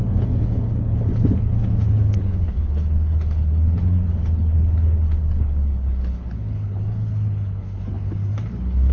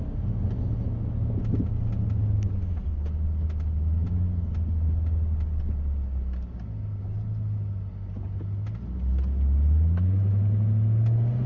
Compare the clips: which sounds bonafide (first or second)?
second